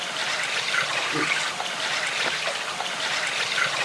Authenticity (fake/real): real